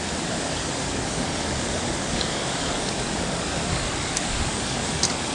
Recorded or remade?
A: remade